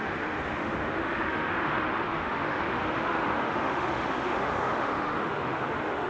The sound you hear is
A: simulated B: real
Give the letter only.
A